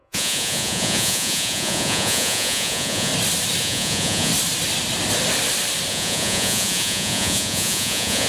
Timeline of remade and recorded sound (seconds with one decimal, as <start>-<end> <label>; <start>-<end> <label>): 0.0-3.1 remade; 3.1-3.6 recorded; 3.6-4.3 remade; 4.3-5.9 recorded; 5.9-8.3 remade